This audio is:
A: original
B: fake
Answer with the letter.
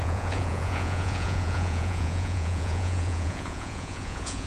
B